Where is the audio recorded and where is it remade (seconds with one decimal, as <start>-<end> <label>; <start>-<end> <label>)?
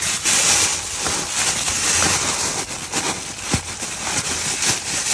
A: 0.0-5.1 recorded